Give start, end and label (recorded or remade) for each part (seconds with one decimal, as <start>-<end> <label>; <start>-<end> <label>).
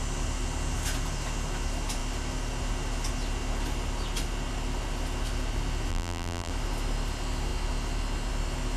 0.0-5.9 recorded; 5.9-6.5 remade; 6.5-8.8 recorded